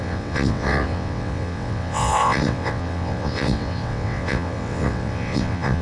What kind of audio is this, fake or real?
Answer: fake